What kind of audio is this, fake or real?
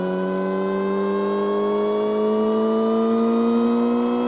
real